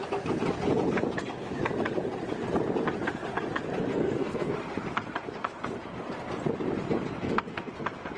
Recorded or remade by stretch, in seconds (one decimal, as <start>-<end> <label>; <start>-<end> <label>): 0.0-3.9 recorded; 3.9-4.5 remade; 4.5-7.2 recorded; 7.2-7.7 remade; 7.7-8.2 recorded